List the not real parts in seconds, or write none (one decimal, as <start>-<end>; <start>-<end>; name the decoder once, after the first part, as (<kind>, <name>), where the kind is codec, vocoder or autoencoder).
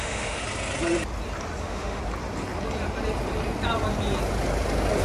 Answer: 0.0-0.4 (autoencoder, DAC-VAE); 1.6-2.0